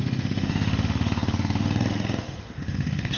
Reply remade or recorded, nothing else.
remade